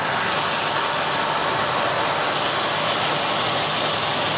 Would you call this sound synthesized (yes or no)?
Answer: no